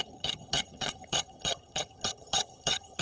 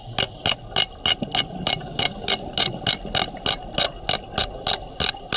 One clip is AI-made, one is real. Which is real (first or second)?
second